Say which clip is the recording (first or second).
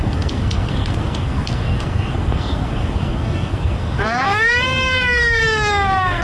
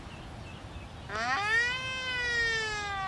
second